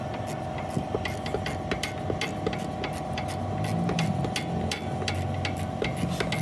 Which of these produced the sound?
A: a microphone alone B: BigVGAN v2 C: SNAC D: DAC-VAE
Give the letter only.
A